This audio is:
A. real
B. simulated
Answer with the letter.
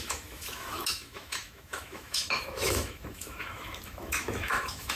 B